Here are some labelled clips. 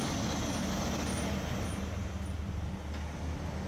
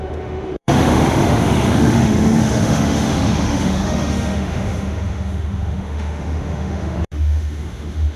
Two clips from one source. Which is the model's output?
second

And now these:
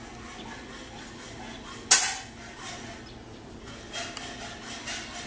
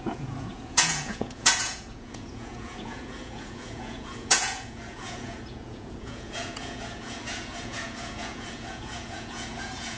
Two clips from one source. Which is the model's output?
second